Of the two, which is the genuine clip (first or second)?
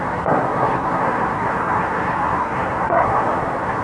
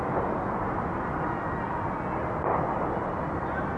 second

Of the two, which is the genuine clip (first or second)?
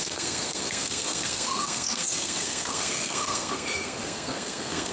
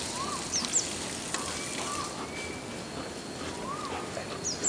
second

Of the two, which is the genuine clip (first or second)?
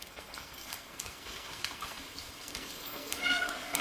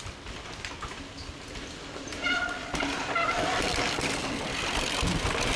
second